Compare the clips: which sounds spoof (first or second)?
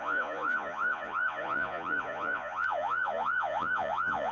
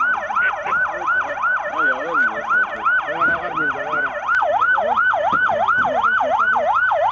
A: first